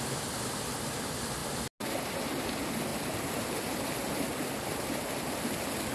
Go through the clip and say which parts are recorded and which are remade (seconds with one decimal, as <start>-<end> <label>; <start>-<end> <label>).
0.0-5.9 recorded